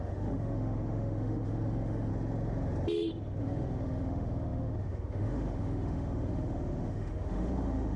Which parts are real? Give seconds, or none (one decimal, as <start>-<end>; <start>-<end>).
2.1-3.4

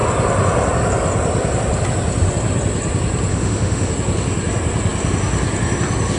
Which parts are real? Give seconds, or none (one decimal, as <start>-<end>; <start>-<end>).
0.0-3.3; 3.9-6.2

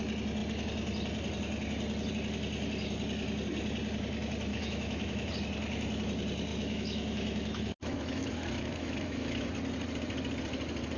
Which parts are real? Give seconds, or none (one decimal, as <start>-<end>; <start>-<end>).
0.0-4.5; 5.3-6.5; 9.5-11.0

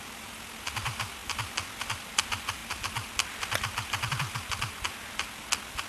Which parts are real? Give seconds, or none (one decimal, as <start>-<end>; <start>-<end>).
0.0-5.9

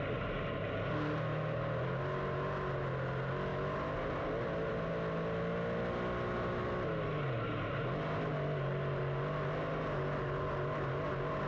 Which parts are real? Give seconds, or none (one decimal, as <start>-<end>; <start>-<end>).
0.0-11.5